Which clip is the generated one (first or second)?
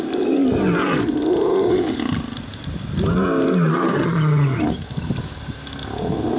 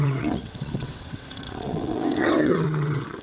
second